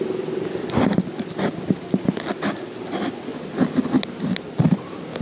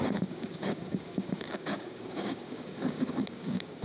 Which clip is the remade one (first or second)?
second